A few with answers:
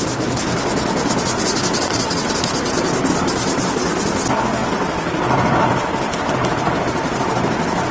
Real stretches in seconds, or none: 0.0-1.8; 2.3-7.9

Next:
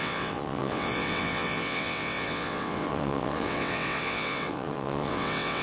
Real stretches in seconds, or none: none

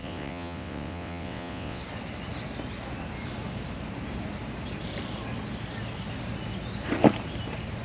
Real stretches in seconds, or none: 1.8-7.8

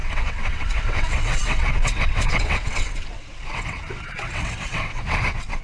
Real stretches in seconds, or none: none

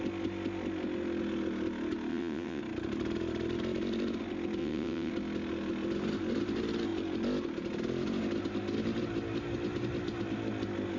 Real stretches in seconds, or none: 0.0-2.1; 2.6-4.6; 5.1-11.0